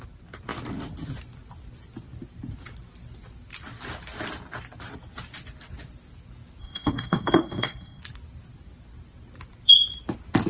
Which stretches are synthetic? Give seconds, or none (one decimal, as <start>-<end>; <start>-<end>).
6.6-8.0